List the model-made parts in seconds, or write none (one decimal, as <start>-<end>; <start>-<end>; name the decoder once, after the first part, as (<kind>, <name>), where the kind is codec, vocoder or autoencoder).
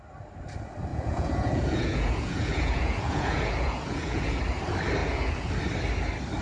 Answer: 0.9-4.4 (vocoder, Vocos); 5.0-5.5